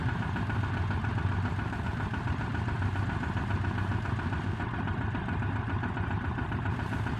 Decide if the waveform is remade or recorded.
recorded